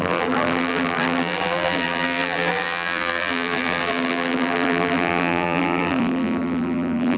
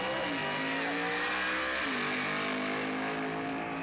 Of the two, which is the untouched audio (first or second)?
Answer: second